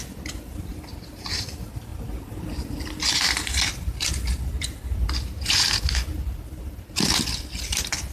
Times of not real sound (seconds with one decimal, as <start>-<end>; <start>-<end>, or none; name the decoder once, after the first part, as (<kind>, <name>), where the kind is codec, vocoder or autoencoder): none